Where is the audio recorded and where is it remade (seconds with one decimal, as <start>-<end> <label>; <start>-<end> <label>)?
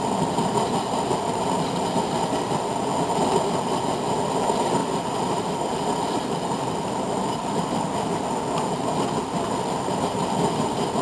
0.0-11.0 recorded